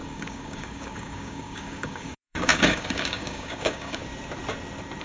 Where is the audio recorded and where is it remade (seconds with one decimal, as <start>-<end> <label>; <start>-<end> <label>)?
0.0-4.0 remade; 4.0-5.0 recorded